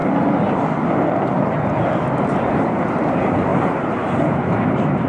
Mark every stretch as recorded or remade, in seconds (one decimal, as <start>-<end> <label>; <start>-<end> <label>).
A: 0.0-2.5 recorded; 2.5-5.1 remade